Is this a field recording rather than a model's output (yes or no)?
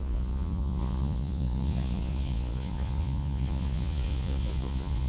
no